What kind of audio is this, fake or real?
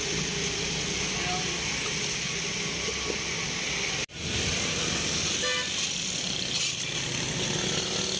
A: real